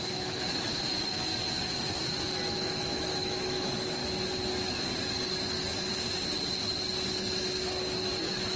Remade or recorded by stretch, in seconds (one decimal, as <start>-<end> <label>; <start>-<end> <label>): 0.0-1.3 remade; 1.3-2.5 recorded; 2.5-4.0 remade; 4.0-8.2 recorded; 8.2-8.6 remade